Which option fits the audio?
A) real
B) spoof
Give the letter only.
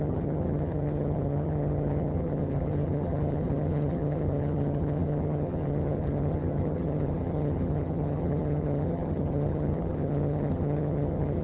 B